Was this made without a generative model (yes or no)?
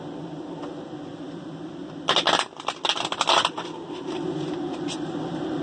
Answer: yes